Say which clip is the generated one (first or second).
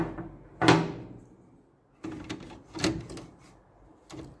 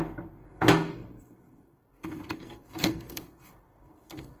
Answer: second